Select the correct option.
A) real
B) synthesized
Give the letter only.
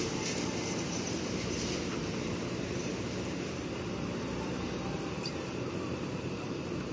B